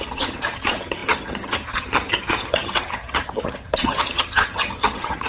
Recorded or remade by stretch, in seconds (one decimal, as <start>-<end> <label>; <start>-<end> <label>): 0.0-5.3 remade